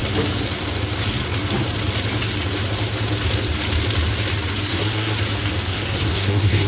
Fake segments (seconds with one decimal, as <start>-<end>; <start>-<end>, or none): 4.7-5.2; 5.7-6.7